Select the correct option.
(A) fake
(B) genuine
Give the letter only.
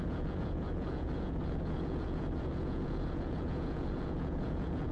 A